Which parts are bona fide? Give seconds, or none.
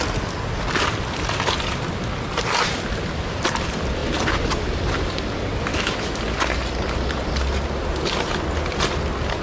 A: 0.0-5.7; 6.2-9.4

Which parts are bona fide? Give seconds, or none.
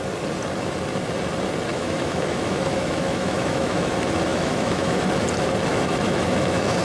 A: 0.0-1.7; 3.9-4.3; 5.0-5.7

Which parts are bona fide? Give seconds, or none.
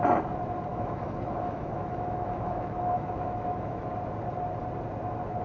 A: 0.0-0.7; 3.9-5.4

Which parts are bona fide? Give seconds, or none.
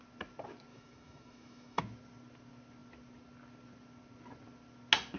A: 0.0-0.7; 1.8-5.2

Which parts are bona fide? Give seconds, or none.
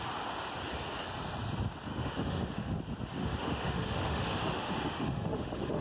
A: 0.0-1.9; 2.8-3.2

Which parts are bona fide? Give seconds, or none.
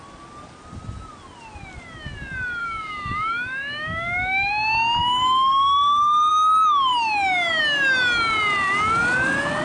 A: 0.0-2.6; 4.5-5.0; 6.3-9.6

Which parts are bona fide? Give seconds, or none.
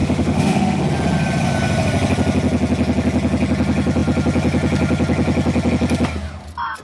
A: 0.8-6.8